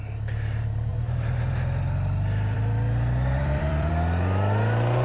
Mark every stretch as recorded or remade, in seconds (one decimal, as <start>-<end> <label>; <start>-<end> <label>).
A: 0.0-0.9 recorded; 0.9-3.9 remade; 3.9-5.0 recorded